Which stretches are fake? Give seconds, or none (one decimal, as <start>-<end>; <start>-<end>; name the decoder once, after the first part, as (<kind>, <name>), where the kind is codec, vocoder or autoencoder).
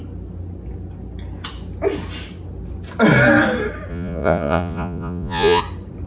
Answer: 3.9-5.6 (vocoder, Vocos)